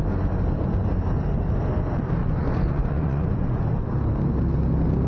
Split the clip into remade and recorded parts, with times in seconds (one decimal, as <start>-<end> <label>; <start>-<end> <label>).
0.0-2.2 recorded; 2.2-3.6 remade; 3.6-5.1 recorded